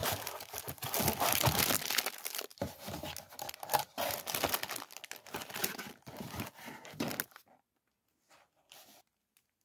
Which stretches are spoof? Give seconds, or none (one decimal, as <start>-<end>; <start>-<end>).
none